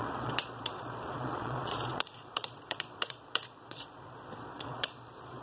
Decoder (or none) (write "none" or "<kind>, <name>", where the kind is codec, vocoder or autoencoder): vocoder, Vocos